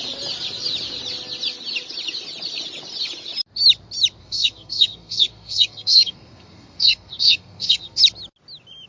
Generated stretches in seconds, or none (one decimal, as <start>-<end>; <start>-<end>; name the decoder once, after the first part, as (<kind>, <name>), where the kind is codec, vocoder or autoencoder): 4.2-8.0 (codec, SNAC)